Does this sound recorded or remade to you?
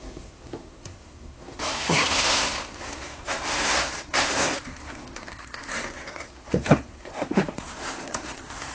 remade